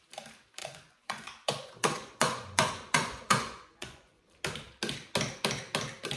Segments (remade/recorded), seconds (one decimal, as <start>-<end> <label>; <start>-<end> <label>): 0.0-0.6 recorded; 0.6-4.3 remade; 4.3-6.2 recorded